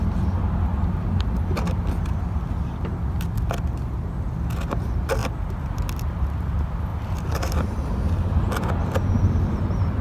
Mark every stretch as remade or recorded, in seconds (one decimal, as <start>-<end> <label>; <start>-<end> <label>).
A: 0.0-5.2 recorded; 5.2-5.7 remade; 5.7-6.9 recorded; 6.9-8.4 remade; 8.4-10.0 recorded